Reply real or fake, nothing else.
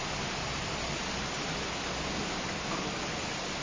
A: real